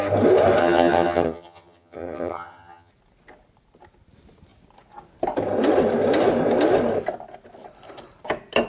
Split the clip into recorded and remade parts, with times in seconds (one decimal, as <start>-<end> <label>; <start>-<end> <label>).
0.0-0.6 recorded; 0.6-2.9 remade; 2.9-8.7 recorded